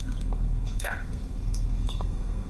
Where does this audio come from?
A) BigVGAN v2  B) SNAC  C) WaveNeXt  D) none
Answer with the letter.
B